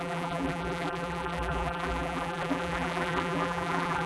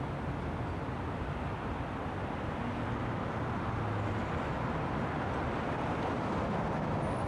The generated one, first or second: first